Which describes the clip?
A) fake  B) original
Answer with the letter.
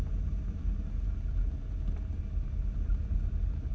B